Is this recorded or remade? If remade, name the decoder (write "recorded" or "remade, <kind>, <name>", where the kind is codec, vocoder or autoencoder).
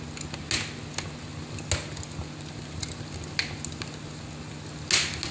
recorded